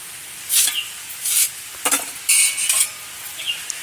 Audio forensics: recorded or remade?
recorded